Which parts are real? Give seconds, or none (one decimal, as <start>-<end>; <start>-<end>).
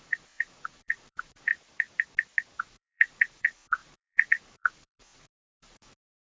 1.5-2.6